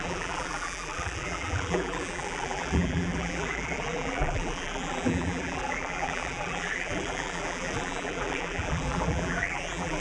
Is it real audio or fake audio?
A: fake